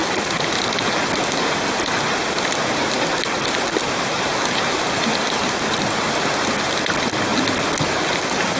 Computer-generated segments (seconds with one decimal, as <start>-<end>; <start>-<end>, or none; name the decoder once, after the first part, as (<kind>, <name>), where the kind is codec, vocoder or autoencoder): none